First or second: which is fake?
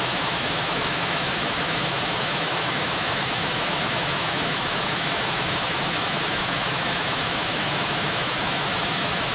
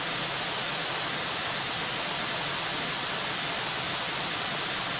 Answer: first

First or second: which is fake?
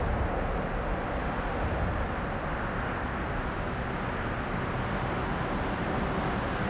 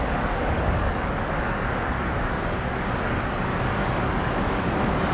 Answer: second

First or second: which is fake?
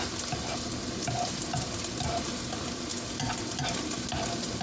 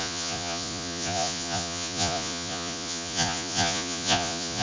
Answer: second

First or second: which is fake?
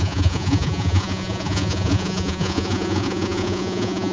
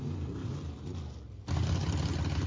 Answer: first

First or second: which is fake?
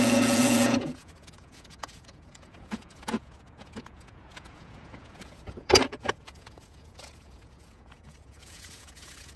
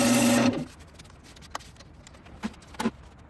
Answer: first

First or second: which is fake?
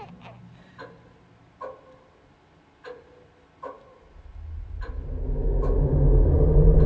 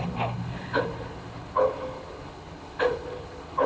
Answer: second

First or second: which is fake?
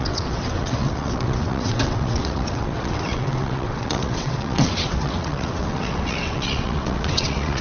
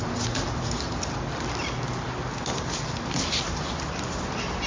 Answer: first